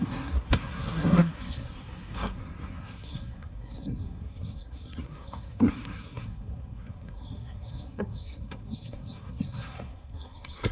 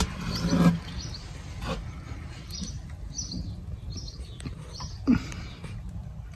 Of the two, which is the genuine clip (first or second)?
second